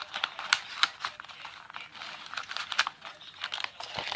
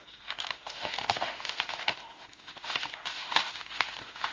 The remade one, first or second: second